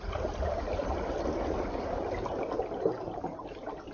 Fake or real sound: real